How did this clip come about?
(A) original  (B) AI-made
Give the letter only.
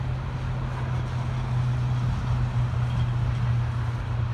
A